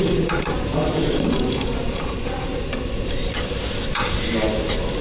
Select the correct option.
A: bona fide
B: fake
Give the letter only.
B